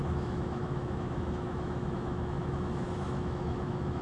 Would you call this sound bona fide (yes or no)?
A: no